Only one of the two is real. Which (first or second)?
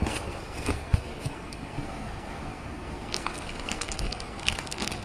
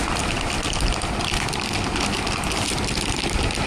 second